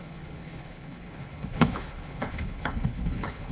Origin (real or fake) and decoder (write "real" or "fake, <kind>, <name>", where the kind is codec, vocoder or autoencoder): fake, codec, HILCodec